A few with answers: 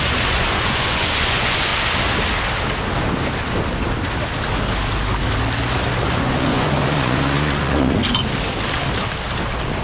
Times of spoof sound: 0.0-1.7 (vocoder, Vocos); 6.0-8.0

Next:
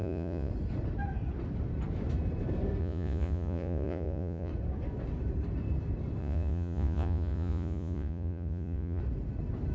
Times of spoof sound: 0.0-0.5 (vocoder, Vocos); 2.8-4.5; 6.2-9.0